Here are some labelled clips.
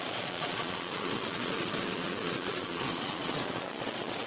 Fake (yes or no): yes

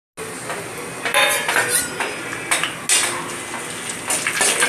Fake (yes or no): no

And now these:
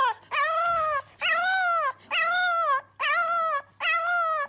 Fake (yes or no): no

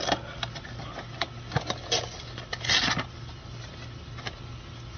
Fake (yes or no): no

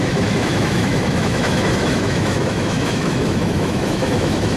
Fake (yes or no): yes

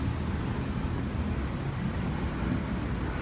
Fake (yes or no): no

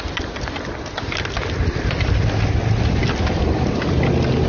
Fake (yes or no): no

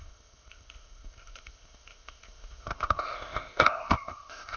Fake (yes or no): yes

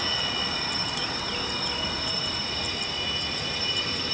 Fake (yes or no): no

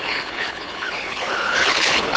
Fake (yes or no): yes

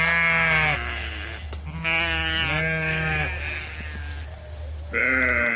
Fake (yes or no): no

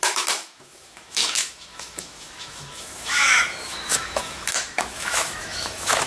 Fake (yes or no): yes